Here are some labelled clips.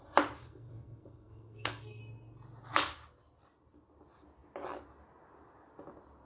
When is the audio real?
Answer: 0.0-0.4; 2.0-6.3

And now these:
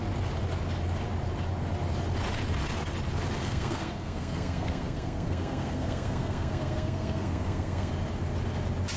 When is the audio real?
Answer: 0.0-3.4; 7.9-9.0

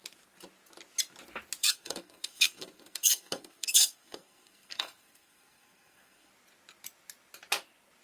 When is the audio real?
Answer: 0.0-1.6; 6.3-8.0

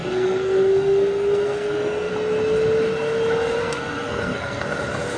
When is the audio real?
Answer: 2.1-3.6; 4.8-5.2

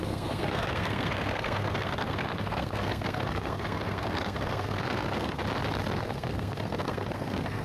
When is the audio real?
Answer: 5.4-6.0